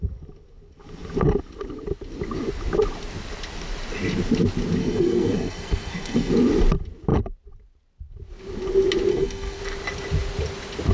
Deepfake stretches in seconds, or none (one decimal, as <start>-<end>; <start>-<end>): 4.8-6.3; 9.1-9.6